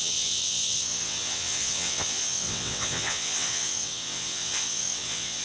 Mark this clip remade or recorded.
remade